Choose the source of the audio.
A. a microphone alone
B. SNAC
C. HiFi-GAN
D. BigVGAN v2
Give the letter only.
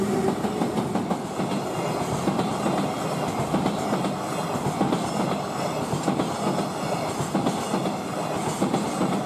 A